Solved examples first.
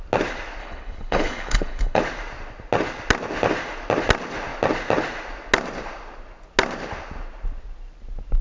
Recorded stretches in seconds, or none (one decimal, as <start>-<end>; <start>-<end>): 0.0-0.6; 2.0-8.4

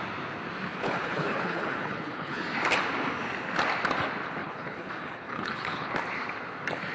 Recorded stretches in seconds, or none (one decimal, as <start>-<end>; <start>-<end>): 0.0-0.7; 2.4-4.4; 5.9-6.9

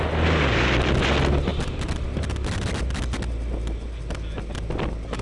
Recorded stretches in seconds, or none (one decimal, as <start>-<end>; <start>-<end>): 0.0-5.2

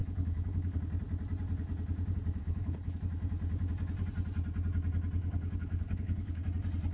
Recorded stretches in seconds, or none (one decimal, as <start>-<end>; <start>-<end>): 0.8-2.4; 3.0-5.2; 6.4-6.9